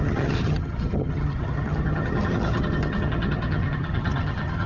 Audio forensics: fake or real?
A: fake